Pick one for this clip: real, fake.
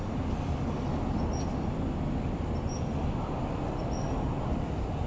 real